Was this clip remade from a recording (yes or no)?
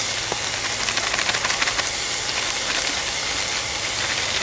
no